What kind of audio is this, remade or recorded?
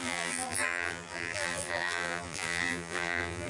remade